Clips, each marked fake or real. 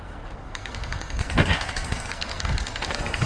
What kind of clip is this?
fake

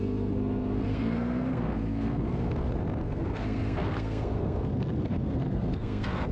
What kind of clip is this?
fake